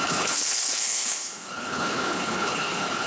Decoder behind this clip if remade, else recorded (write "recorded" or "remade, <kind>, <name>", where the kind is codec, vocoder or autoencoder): remade, codec, HILCodec